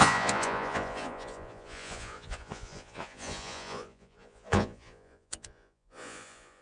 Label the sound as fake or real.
fake